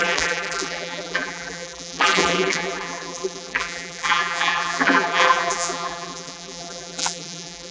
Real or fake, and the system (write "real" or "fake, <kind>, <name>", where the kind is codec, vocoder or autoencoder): fake, vocoder, BigVGAN v2